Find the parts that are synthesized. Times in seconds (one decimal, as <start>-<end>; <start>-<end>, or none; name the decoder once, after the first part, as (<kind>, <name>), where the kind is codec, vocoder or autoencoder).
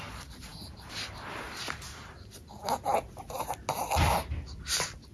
none